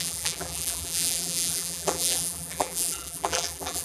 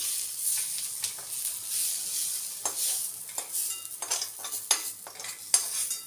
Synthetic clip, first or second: first